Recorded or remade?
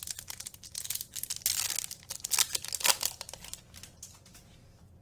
recorded